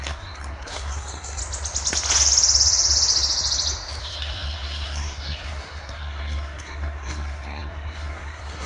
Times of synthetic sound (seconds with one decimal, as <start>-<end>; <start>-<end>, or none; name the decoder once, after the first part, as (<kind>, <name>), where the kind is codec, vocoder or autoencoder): 0.0-1.4 (codec, SNAC); 4.0-8.7